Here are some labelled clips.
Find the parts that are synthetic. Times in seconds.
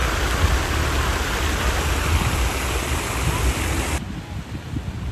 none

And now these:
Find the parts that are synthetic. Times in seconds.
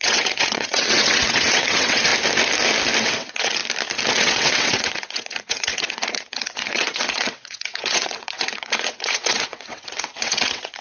0.0-2.1; 3.0-3.6; 4.1-10.8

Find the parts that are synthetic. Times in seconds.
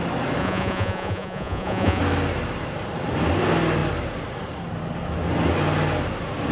0.4-2.0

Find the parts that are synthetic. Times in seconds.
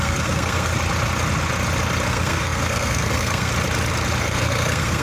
0.0-0.7; 2.1-3.5; 4.2-5.0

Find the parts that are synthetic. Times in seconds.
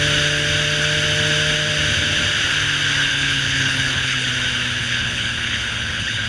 3.1-4.3; 4.8-6.3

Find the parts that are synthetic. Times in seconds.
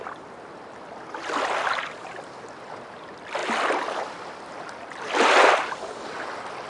none